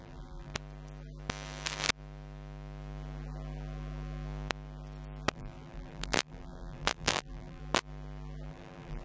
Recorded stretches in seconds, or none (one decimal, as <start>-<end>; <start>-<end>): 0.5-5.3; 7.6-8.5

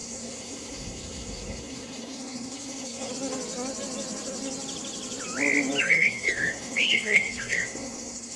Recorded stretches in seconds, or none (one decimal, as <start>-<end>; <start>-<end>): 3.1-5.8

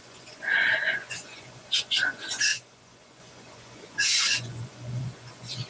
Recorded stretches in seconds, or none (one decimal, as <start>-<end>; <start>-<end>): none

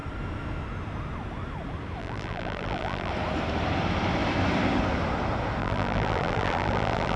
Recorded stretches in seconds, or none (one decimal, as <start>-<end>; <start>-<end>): 0.0-2.0; 3.1-5.6

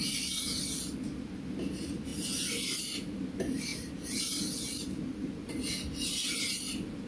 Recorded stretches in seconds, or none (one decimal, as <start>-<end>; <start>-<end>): 0.0-7.1

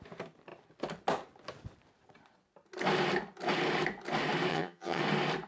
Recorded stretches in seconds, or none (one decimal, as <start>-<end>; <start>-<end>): 0.0-4.5; 5.0-5.5

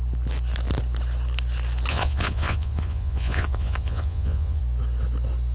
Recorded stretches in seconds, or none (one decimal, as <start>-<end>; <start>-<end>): 0.0-1.9; 4.6-5.5

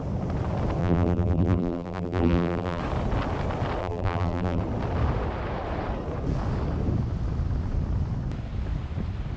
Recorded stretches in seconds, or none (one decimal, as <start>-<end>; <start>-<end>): 0.0-0.8; 2.8-3.8; 4.6-9.4